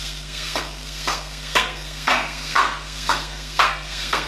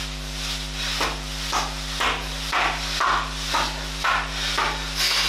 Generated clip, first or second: first